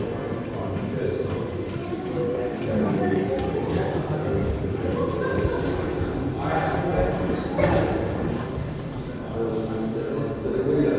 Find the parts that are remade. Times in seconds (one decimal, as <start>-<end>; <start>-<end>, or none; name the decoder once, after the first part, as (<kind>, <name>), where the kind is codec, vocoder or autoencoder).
1.8-5.0 (codec, DAC)